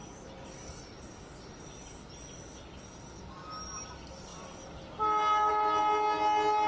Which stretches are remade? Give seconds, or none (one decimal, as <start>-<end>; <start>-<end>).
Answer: none